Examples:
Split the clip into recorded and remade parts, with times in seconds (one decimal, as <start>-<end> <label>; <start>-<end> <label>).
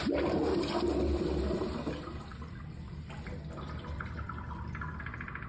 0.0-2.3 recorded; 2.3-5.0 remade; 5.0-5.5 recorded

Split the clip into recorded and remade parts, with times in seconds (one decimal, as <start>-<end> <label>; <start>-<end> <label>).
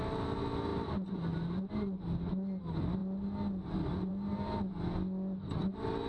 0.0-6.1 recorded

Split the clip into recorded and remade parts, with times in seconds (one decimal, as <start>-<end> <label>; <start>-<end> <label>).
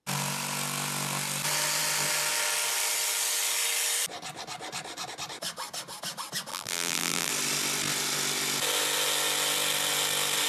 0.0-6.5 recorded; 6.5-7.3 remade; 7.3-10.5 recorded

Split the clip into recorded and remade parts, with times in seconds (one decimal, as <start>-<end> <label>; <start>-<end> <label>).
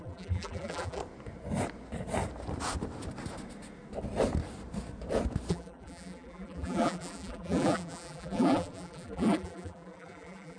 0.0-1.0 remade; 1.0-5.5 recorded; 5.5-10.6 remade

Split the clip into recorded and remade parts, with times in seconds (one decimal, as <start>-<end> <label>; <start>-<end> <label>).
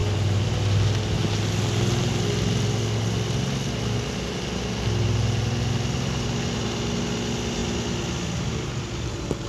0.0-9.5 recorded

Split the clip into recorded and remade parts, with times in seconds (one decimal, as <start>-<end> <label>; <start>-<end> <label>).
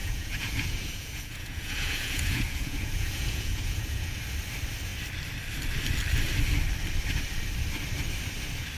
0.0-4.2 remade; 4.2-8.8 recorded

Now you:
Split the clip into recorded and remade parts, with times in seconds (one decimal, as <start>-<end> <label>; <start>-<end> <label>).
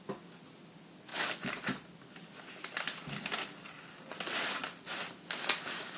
0.0-6.0 recorded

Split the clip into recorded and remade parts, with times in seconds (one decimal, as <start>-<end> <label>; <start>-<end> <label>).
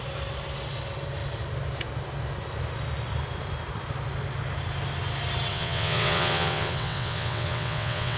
0.0-5.5 recorded; 5.5-8.2 remade